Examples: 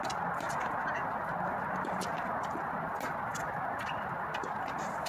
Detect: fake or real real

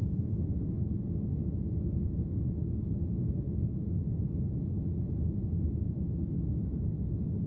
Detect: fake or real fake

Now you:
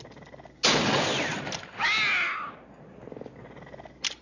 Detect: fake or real real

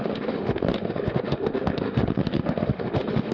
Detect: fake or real fake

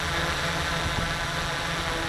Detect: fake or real real